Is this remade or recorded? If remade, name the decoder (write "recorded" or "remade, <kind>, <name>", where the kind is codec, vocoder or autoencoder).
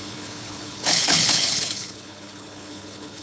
remade, codec, HILCodec